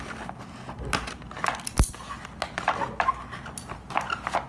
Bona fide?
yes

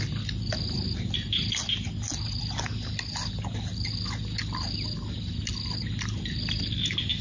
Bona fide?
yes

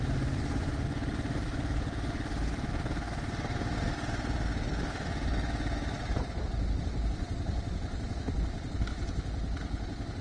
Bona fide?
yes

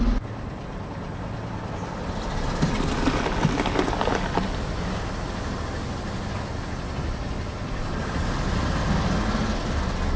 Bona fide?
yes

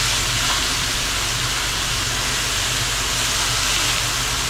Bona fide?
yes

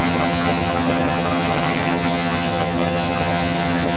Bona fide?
no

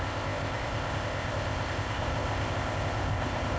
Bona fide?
no